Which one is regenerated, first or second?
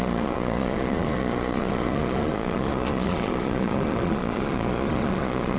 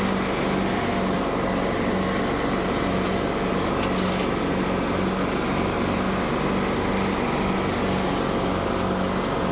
first